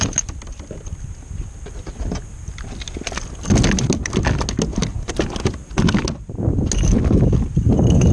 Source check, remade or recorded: recorded